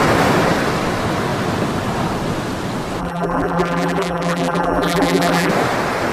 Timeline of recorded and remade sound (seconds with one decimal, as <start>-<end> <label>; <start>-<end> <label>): 0.0-3.0 recorded; 3.0-5.5 remade; 5.5-6.1 recorded